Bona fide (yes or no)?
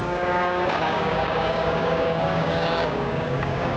no